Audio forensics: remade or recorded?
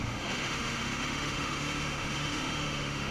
remade